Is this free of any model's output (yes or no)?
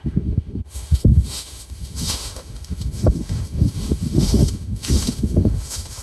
no